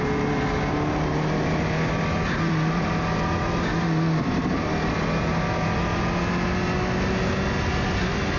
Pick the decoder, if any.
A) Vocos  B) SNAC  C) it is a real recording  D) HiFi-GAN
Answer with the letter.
C